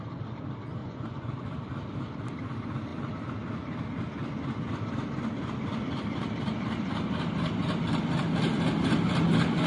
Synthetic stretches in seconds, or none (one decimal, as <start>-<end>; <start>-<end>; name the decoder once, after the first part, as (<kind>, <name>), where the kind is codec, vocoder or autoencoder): 0.8-1.3 (vocoder, Vocos)